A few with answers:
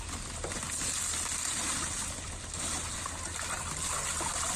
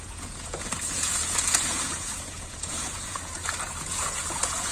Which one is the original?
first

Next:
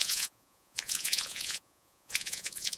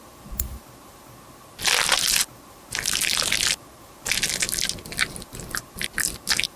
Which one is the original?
second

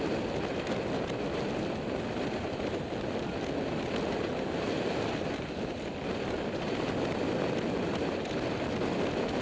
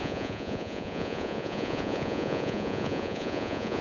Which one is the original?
first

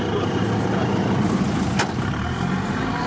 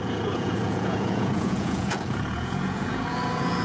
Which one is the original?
first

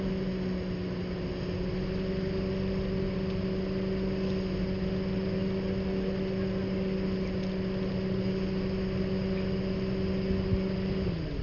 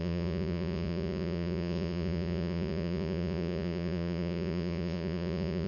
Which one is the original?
first